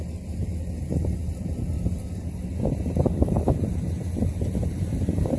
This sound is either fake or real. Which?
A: real